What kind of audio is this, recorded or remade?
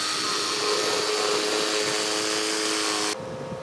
recorded